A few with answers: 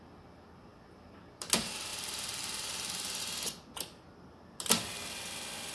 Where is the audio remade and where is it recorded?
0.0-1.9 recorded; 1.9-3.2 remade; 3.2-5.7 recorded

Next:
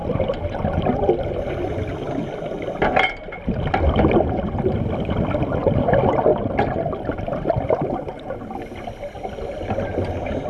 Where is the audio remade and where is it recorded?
0.0-0.6 remade; 0.6-6.3 recorded; 6.3-7.5 remade; 7.5-10.5 recorded

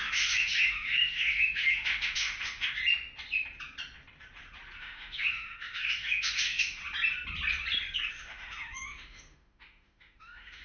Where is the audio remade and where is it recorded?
0.0-2.8 remade; 2.8-4.8 recorded; 4.8-6.8 remade; 6.8-8.1 recorded; 8.1-10.6 remade

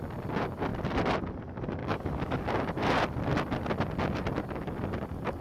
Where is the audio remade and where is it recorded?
0.0-1.8 recorded; 1.8-2.4 remade; 2.4-5.4 recorded

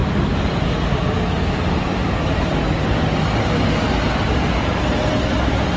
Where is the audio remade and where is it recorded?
0.0-5.8 recorded

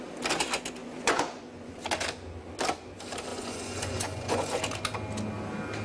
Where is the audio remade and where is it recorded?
0.0-0.8 recorded; 0.8-1.8 remade; 1.8-3.3 recorded; 3.3-4.6 remade; 4.6-5.8 recorded

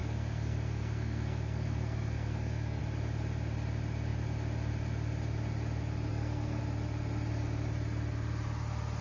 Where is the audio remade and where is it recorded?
0.0-2.8 remade; 2.8-6.1 recorded; 6.1-6.6 remade; 6.6-9.0 recorded